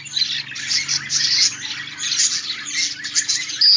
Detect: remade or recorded recorded